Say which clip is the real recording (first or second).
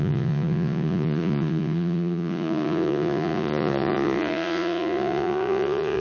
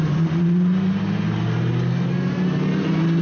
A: second